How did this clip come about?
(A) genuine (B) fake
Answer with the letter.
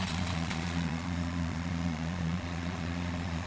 B